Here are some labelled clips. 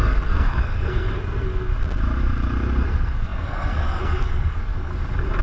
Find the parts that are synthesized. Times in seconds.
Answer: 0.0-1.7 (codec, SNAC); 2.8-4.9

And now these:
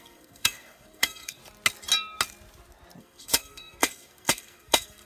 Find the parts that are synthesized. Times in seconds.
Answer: 0.0-1.4 (codec, SNAC); 3.0-5.1

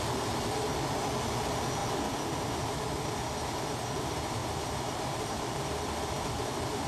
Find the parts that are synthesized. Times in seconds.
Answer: none

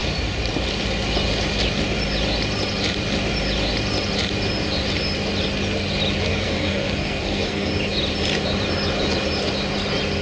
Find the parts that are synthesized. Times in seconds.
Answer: 6.3-7.7 (codec, SNAC)

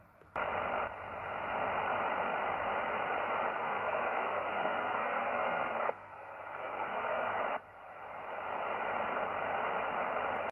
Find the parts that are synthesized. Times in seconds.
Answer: 3.6-7.4 (codec, SNAC)